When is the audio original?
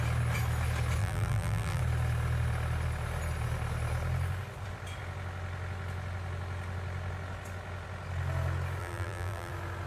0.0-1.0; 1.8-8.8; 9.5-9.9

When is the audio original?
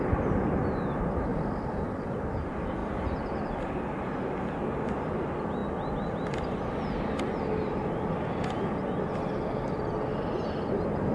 0.0-1.3; 2.2-2.8; 3.5-11.1